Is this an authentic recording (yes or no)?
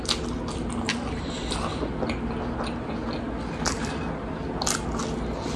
yes